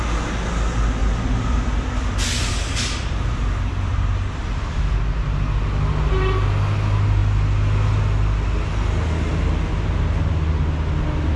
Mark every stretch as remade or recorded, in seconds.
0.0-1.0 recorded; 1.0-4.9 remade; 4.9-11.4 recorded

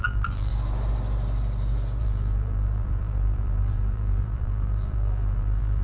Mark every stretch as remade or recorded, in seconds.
0.0-0.5 remade; 0.5-2.0 recorded; 2.0-5.8 remade

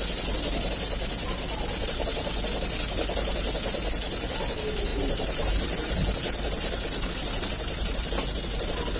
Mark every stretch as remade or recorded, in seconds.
0.0-4.9 recorded; 4.9-5.5 remade; 5.5-9.0 recorded